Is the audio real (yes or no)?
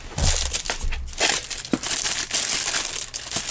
yes